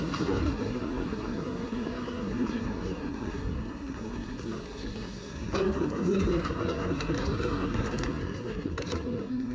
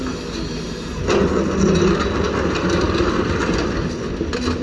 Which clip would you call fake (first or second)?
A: first